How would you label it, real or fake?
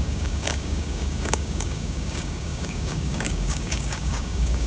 fake